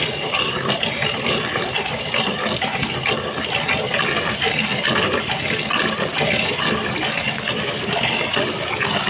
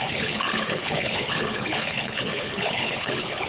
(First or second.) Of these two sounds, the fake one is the second